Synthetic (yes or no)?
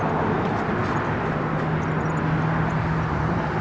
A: no